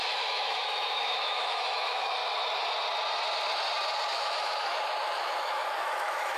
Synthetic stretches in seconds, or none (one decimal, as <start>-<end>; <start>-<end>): 0.0-2.2; 4.1-6.4